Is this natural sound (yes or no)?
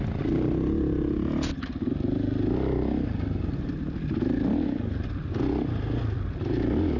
yes